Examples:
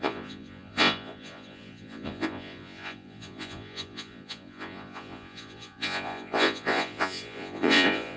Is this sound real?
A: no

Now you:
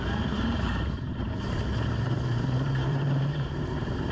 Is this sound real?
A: no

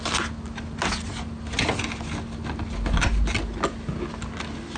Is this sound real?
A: yes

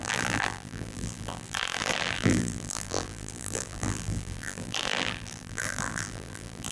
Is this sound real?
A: no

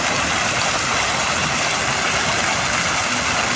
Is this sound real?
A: yes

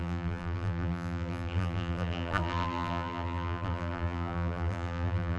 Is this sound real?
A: no